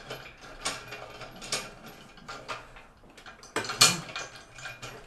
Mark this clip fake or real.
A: real